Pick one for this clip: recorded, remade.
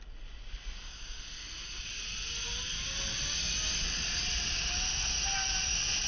recorded